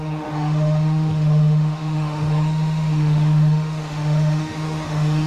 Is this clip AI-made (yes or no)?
yes